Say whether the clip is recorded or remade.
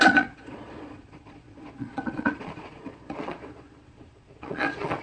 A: remade